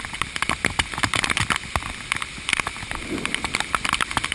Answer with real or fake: real